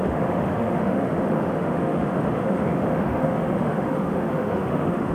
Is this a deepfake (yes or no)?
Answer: yes